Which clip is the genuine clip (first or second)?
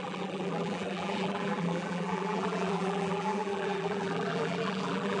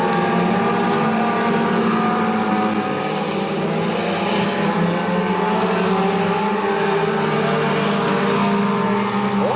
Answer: second